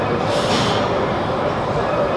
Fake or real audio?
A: fake